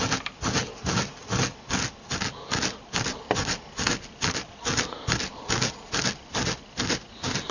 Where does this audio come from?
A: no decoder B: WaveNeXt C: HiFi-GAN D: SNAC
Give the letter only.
A